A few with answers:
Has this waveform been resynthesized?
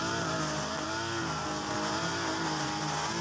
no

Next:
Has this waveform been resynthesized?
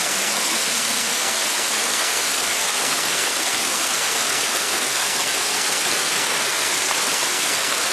yes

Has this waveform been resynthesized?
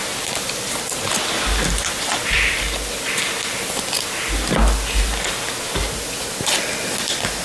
no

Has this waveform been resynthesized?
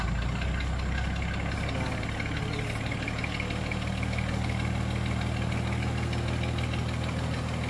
no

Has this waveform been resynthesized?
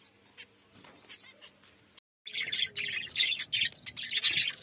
no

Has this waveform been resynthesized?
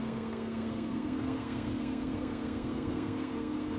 yes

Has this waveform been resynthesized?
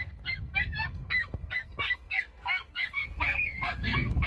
yes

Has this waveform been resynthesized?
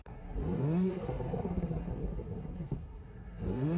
yes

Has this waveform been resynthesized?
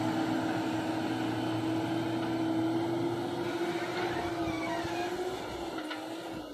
no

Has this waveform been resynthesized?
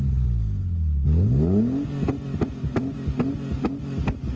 no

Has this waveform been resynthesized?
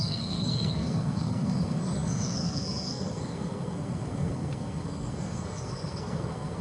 yes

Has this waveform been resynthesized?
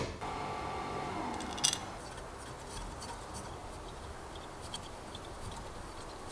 no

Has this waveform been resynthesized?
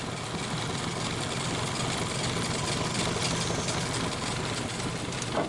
no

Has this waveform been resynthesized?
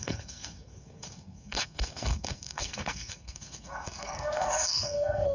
yes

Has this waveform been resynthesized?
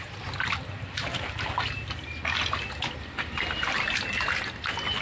no